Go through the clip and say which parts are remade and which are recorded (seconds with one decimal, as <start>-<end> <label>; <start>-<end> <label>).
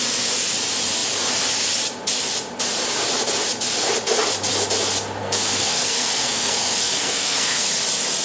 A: 0.0-5.2 recorded; 5.2-7.7 remade; 7.7-8.2 recorded